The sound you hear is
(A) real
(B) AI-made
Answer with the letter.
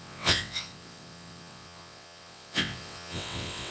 B